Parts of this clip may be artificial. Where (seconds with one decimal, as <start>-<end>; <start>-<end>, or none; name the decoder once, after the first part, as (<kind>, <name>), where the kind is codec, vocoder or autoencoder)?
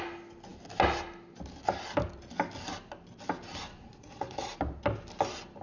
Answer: 3.7-4.6 (vocoder, Vocos)